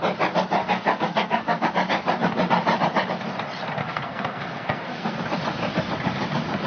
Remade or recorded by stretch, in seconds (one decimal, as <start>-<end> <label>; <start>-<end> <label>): 0.0-0.6 recorded; 0.6-1.7 remade; 1.7-3.8 recorded; 3.8-5.2 remade; 5.2-6.7 recorded